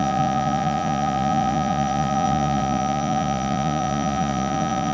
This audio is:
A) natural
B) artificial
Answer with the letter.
B